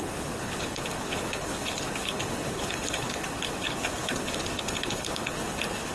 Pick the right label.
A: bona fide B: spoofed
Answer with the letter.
B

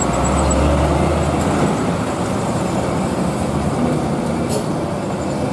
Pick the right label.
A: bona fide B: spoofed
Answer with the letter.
A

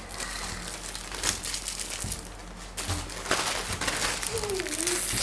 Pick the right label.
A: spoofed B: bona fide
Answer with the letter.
B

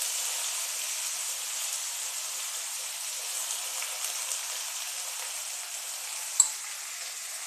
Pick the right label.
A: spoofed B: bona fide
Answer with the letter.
B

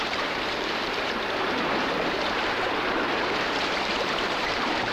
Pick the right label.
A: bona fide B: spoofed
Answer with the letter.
B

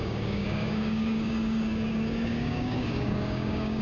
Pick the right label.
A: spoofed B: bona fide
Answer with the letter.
A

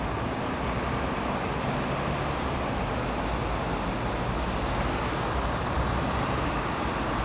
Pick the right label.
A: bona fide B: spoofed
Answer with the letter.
A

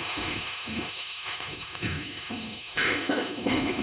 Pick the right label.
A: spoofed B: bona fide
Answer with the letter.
A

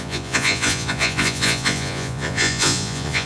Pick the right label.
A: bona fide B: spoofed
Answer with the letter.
B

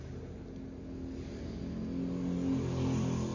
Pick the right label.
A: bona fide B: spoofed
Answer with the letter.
A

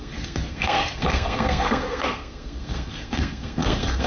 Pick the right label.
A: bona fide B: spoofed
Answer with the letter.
B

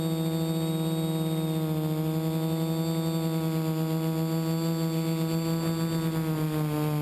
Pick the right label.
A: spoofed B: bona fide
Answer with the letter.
B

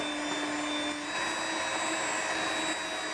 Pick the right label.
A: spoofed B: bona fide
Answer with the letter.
B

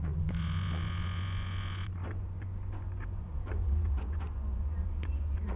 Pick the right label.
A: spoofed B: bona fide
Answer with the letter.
A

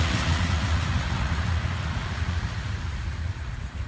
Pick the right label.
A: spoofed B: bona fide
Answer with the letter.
A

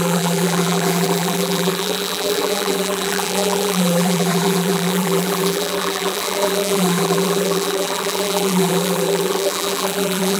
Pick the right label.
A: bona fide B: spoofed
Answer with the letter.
B